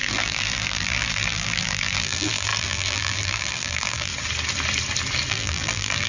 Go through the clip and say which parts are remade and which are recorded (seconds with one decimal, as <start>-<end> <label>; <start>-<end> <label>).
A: 0.0-4.1 remade; 4.1-5.3 recorded; 5.3-6.1 remade